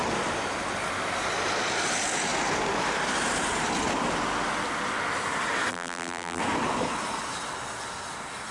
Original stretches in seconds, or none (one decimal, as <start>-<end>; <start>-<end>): 0.0-5.7; 6.4-8.5